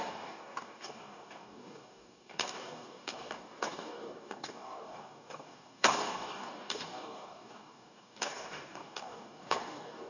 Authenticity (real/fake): fake